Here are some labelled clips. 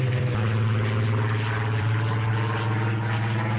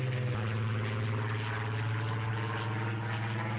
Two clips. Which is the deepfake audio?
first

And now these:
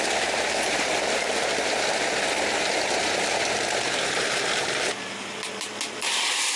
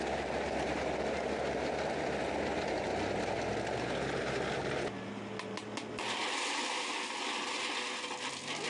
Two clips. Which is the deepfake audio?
first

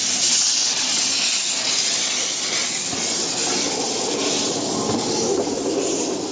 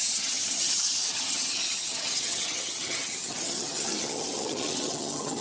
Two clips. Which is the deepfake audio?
second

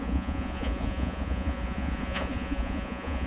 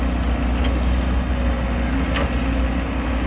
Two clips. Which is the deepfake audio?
first